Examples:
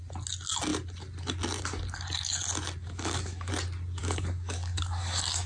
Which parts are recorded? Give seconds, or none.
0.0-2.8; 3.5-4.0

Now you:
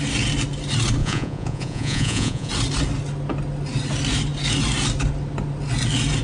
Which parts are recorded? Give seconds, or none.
0.0-1.0; 2.5-6.2

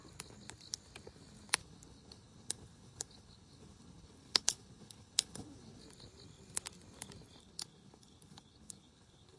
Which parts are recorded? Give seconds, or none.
0.0-1.6; 5.8-7.4